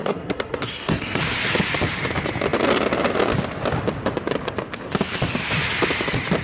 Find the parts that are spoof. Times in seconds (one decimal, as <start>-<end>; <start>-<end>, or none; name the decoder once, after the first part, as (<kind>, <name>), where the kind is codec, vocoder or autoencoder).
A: 0.0-1.2 (codec, SNAC)

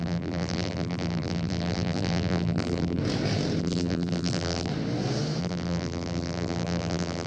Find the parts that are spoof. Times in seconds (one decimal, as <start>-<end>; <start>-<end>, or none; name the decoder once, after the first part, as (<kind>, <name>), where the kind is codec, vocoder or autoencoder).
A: 0.0-3.0 (vocoder, BigVGAN v2); 3.6-4.7; 5.4-7.3

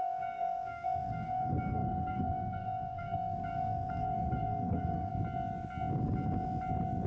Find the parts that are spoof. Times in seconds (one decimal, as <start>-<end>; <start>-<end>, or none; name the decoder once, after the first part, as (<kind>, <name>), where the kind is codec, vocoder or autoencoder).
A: 0.0-5.1 (codec, SNAC)

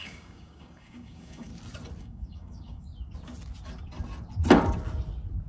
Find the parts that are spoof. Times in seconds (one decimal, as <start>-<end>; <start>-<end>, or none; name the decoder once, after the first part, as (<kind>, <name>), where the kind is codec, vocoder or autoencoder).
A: 0.0-1.5 (codec, DAC); 2.0-2.9

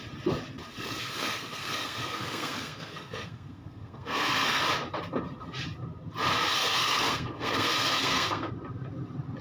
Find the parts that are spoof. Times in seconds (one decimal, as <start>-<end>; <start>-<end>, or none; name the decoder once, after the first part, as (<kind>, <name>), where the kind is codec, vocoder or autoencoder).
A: 0.7-4.6 (codec, SNAC); 6.6-8.5